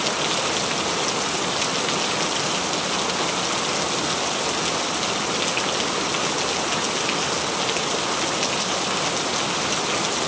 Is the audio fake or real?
real